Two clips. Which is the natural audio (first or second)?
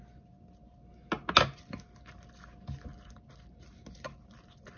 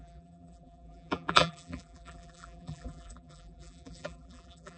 first